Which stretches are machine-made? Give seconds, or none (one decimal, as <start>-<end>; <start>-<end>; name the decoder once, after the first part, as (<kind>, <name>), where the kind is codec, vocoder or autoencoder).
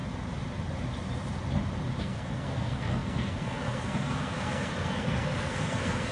2.0-6.1 (codec, SNAC)